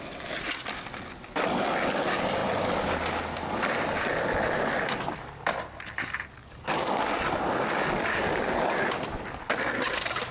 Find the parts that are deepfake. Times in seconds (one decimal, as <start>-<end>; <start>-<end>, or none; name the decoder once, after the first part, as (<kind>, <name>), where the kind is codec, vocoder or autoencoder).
6.4-7.0 (codec, DAC); 8.0-8.9